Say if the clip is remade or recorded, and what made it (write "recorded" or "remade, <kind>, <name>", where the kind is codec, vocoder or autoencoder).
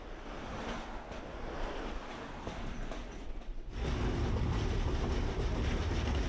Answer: recorded